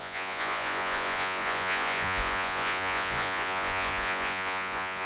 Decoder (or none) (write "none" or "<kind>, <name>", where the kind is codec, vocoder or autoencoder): vocoder, Vocos